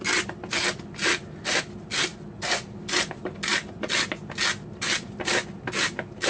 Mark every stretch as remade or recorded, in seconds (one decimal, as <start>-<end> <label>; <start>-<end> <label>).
0.0-6.3 recorded